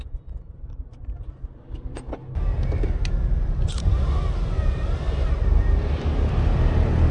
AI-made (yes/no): no